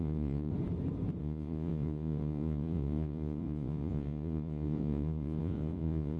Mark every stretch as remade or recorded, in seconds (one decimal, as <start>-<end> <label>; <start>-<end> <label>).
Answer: 0.0-0.5 remade; 0.5-1.2 recorded; 1.2-6.2 remade